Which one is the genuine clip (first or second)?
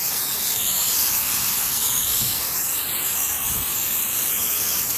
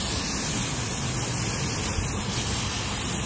second